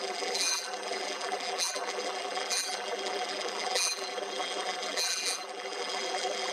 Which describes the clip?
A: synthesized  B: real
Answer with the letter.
A